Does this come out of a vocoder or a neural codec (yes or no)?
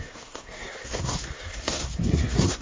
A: yes